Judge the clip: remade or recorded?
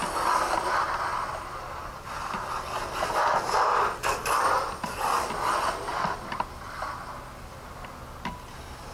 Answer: recorded